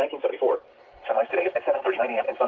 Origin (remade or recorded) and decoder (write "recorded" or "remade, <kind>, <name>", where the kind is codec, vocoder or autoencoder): recorded